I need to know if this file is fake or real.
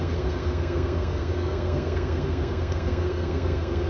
fake